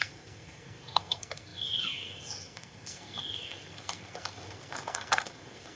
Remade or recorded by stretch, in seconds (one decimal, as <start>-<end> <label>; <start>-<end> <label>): 0.0-5.8 remade